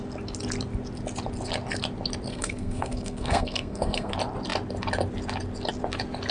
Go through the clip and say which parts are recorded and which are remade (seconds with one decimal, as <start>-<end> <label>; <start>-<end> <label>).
0.0-2.3 recorded; 2.3-4.1 remade; 4.1-6.3 recorded